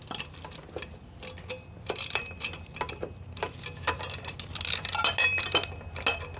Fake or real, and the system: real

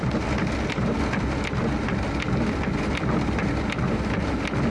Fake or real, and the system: real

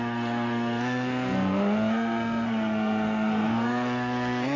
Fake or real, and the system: fake, codec, SNAC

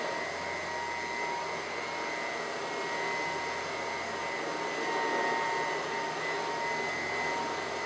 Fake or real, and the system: real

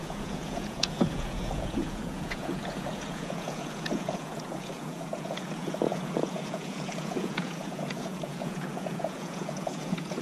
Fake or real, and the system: fake, vocoder, Vocos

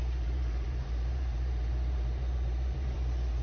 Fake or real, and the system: fake, vocoder, BigVGAN v2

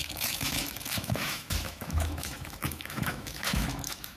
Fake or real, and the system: fake, autoencoder, DAC-VAE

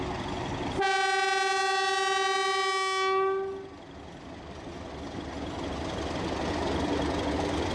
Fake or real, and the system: real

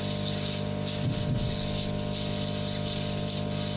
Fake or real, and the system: real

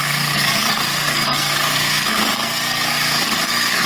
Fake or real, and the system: fake, codec, SNAC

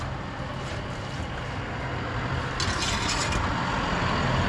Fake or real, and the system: real